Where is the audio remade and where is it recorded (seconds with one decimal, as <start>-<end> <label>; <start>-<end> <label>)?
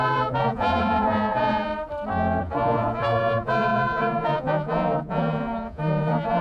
0.0-1.7 remade; 1.7-2.4 recorded; 2.4-6.4 remade